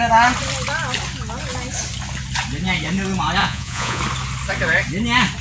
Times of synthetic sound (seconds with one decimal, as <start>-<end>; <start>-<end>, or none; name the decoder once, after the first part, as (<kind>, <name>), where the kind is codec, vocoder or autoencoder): 3.4-4.0 (vocoder, Vocos)